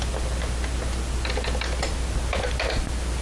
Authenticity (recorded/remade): recorded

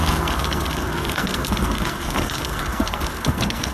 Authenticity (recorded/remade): remade